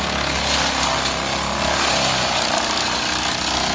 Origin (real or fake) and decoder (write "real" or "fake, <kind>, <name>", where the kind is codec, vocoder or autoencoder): real